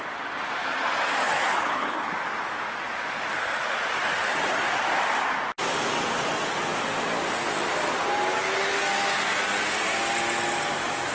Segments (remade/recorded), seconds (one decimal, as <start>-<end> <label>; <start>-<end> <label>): 0.0-1.5 recorded; 1.5-2.1 remade; 2.1-11.1 recorded